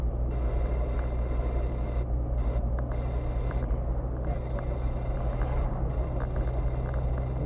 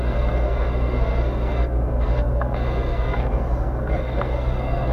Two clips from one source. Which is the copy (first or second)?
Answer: second